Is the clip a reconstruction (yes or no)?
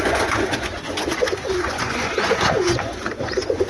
yes